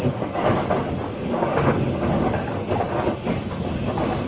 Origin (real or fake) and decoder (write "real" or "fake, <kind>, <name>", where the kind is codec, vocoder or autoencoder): fake, codec, DAC